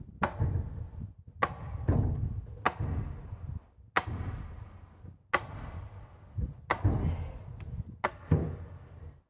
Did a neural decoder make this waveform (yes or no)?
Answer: no